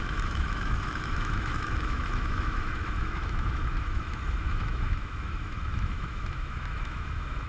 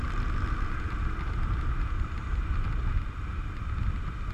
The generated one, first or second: first